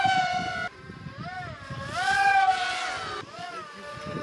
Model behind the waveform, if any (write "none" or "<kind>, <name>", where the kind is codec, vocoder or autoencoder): none